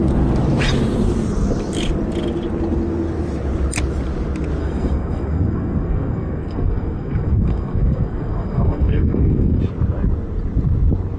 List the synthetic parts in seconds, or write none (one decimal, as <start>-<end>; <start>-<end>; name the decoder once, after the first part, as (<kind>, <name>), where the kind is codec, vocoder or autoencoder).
4.6-9.6 (codec, SNAC)